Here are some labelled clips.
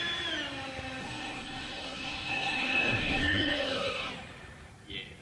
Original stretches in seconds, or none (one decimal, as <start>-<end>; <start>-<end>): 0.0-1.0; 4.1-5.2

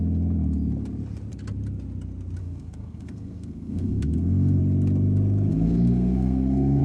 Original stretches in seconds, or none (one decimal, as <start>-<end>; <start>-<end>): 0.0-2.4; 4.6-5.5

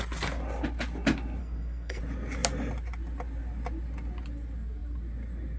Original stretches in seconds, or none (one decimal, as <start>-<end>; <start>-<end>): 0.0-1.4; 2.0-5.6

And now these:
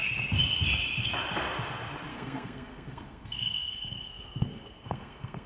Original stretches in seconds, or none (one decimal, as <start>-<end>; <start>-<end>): 0.0-2.1

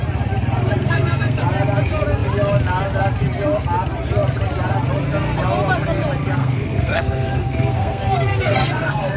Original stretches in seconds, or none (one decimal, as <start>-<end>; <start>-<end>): 0.0-0.8; 1.4-6.4

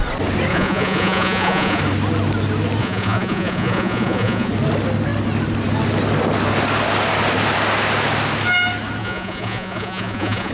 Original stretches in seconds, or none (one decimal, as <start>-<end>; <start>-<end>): 0.0-0.5; 1.8-2.8; 4.5-9.0

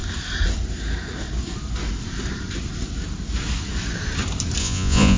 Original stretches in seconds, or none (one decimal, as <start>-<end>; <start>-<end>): 0.0-4.6